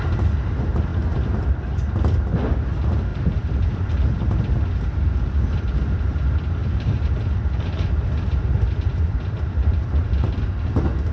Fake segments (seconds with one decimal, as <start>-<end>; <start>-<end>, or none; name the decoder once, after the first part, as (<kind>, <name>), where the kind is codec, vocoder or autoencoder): 3.1-3.9 (vocoder, BigVGAN v2); 6.6-9.7